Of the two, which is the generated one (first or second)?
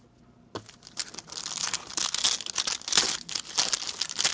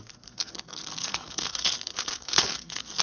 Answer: second